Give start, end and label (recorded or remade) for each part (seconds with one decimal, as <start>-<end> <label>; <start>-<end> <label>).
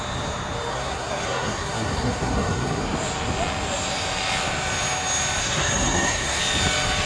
0.0-0.7 recorded; 0.7-2.8 remade; 2.8-5.4 recorded; 5.4-6.4 remade; 6.4-7.1 recorded